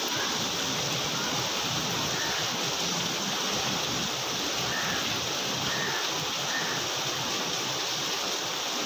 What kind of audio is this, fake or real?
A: real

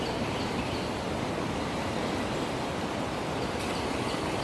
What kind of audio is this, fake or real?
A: real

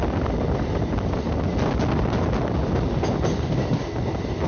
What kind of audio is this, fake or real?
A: real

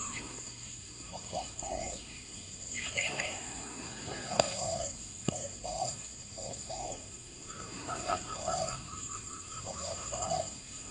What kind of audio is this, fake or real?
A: fake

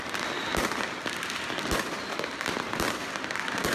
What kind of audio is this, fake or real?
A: real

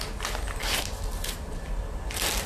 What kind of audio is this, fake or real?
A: real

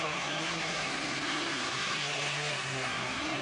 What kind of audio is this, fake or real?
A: fake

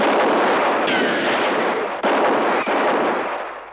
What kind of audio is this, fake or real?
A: real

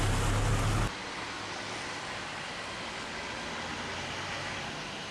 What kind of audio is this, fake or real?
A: real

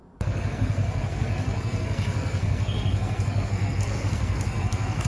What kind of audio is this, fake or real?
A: fake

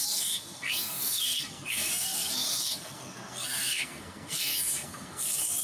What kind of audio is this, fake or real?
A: fake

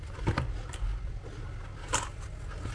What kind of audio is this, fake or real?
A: real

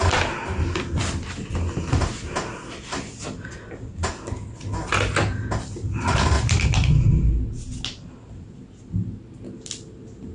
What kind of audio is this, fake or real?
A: real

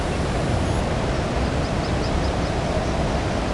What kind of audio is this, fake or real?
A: real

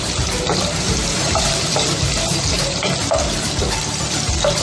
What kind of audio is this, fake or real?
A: real